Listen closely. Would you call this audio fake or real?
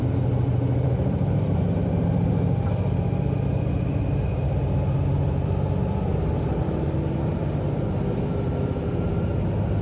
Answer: fake